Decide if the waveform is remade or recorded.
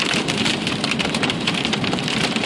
remade